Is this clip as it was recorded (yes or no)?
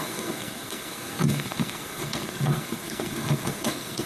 no